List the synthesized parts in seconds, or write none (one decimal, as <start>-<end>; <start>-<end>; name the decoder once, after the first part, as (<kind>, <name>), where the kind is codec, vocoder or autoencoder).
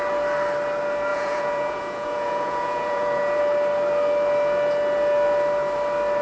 1.1-3.4 (vocoder, Vocos)